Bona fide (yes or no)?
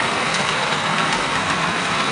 no